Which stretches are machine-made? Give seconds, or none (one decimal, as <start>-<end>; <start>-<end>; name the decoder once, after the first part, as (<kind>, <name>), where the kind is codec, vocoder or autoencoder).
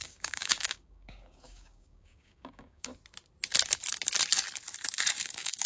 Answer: 0.0-2.9 (codec, DAC); 5.2-5.7